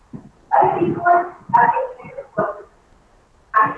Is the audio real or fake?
real